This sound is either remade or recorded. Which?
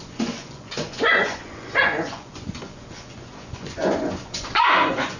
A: remade